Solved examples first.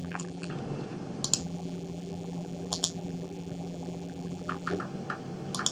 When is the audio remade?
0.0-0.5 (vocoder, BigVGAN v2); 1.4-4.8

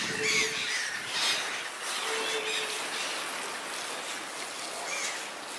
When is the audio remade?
0.6-1.6 (vocoder, BigVGAN v2)

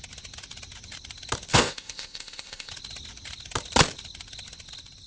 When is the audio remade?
1.5-2.7 (codec, ZipCodec)

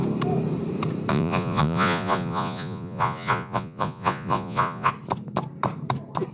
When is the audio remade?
1.1-4.9 (vocoder, Vocos)